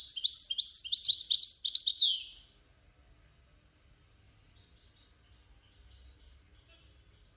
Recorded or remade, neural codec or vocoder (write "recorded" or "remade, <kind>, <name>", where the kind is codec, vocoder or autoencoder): recorded